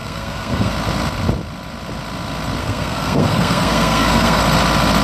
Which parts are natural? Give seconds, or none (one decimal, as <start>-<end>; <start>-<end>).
0.7-2.6; 4.4-5.0